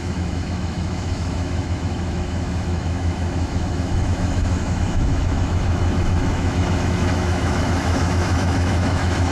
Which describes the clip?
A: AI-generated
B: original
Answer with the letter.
A